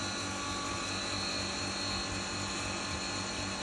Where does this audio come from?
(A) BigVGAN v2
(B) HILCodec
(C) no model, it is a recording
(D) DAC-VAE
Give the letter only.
C